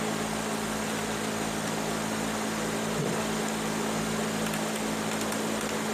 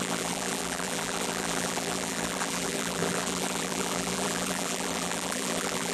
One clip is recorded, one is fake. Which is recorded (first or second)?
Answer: first